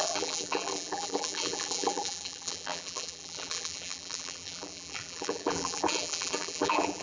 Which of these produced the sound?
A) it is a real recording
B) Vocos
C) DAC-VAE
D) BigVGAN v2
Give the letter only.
D